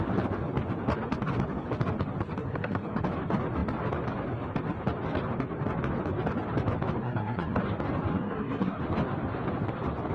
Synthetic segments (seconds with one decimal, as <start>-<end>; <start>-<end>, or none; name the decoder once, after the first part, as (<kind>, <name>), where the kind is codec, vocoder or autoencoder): 2.4-3.0 (codec, SNAC); 7.0-7.6; 8.1-8.8